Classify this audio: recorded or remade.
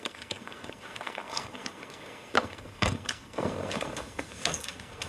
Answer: remade